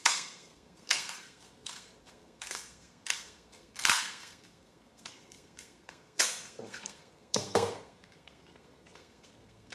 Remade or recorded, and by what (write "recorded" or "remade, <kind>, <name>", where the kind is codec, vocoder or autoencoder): remade, codec, SNAC